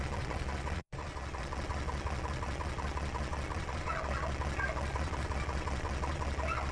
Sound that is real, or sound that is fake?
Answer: fake